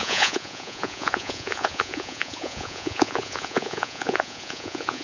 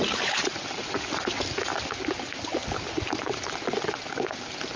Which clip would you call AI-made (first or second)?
first